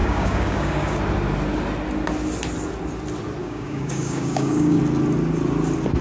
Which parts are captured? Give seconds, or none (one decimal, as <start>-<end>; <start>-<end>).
1.0-3.4; 4.8-6.0

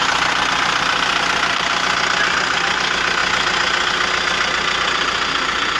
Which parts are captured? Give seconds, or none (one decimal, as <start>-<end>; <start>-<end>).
0.0-5.8